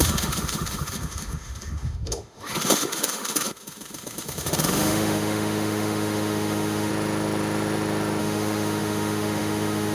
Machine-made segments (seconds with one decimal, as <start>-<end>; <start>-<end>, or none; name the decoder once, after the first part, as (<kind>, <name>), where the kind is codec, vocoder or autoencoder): 0.0-6.9 (autoencoder, DAC-VAE); 8.2-9.9